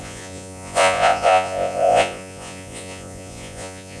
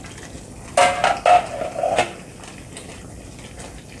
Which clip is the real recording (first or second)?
second